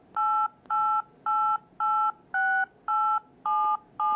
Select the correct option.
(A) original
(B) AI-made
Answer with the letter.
A